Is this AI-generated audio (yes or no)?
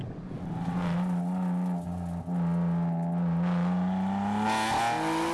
no